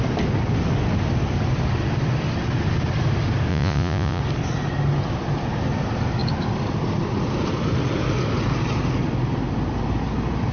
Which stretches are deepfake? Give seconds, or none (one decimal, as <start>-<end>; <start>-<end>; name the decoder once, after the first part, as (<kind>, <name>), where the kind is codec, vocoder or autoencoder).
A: 3.5-4.2 (vocoder, Vocos)